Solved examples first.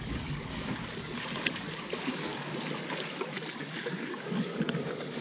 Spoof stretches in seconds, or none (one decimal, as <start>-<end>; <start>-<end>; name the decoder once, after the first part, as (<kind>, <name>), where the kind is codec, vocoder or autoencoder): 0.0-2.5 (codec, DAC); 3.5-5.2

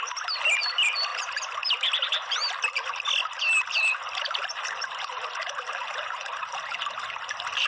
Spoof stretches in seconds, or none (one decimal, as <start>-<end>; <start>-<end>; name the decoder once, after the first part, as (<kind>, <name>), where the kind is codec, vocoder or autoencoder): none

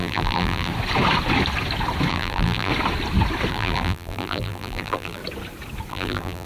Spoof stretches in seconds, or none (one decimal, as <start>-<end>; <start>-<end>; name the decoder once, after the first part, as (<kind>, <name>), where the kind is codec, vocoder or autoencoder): 0.0-0.7 (vocoder, BigVGAN v2); 2.1-2.7; 3.5-5.2; 5.9-6.5

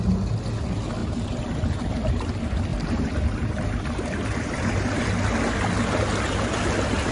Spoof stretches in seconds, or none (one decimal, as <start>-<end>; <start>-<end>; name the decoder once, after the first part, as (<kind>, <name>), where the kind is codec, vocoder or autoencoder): 1.0-2.3 (vocoder, BigVGAN v2); 2.7-5.0

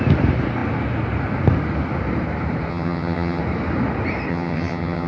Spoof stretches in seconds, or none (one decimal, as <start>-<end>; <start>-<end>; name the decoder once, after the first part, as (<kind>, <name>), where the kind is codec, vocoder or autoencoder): 2.7-3.4 (vocoder, HiFi-GAN); 4.3-5.1

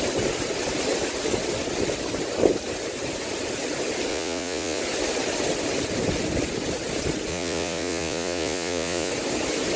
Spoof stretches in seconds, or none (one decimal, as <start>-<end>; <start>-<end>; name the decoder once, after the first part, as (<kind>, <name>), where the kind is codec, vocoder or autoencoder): 4.1-4.8 (vocoder, Vocos); 7.3-9.1

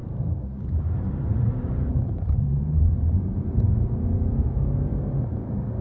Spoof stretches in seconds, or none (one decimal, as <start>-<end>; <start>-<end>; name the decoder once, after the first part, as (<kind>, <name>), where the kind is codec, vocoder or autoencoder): 0.0-3.5 (vocoder, BigVGAN v2)